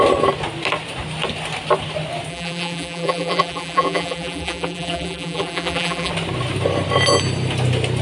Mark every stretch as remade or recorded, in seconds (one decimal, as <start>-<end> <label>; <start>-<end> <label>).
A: 0.0-2.3 recorded; 2.3-6.1 remade; 6.1-8.0 recorded